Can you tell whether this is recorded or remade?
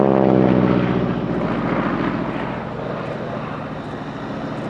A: recorded